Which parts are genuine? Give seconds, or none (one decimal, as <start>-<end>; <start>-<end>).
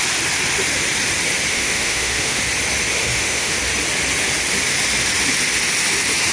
0.0-1.5; 2.4-3.0; 3.6-6.3